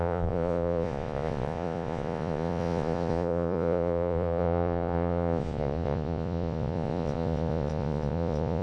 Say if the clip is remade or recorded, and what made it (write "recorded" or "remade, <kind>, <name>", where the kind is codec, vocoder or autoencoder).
remade, vocoder, Vocos